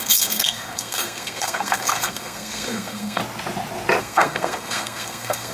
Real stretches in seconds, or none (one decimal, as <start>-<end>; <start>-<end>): 3.2-4.0